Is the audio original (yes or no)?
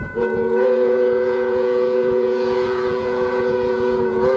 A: no